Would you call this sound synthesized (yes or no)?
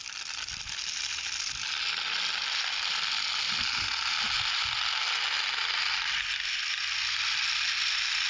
no